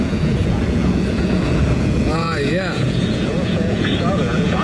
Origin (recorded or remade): remade